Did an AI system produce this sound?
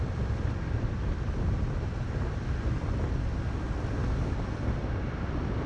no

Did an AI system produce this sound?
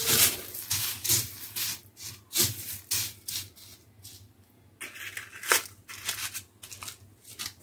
no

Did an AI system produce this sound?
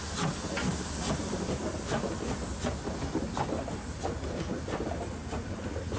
no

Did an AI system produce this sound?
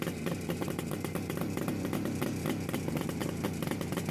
no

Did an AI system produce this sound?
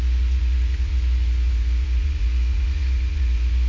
yes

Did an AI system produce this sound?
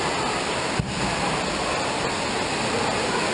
no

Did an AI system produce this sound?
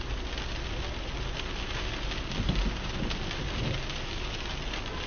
no